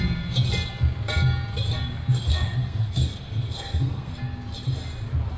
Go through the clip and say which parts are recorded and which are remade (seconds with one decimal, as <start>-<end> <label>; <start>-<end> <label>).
0.0-2.3 recorded; 2.3-4.1 remade; 4.1-5.4 recorded